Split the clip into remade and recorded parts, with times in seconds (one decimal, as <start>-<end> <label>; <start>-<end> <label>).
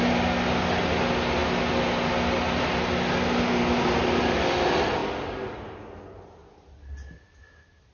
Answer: 0.0-7.9 recorded